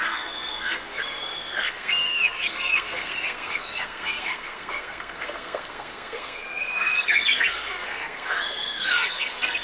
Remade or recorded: remade